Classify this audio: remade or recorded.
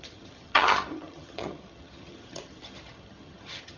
remade